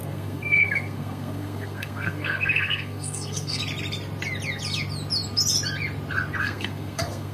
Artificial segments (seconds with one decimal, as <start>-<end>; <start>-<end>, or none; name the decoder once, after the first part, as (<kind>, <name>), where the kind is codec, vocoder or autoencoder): 0.0-3.6 (codec, SNAC); 6.4-7.3